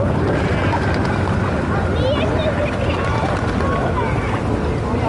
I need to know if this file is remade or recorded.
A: recorded